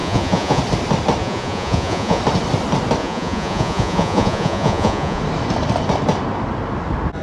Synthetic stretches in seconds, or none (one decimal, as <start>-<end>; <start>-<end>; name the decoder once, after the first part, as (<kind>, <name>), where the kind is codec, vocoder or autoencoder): 0.0-0.6 (vocoder, Vocos); 1.2-2.2; 3.0-5.2